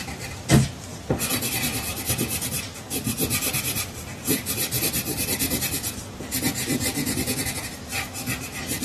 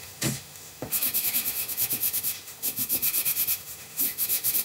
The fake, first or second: second